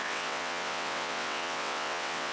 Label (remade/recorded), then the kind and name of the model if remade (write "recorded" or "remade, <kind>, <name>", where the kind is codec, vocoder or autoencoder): remade, vocoder, WaveNeXt